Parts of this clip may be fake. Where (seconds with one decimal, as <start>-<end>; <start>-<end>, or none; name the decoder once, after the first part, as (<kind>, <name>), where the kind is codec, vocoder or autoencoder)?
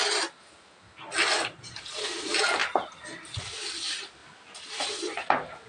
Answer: none